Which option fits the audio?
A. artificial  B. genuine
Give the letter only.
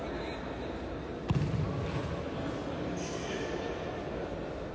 B